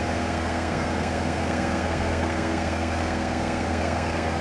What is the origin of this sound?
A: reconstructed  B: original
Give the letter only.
A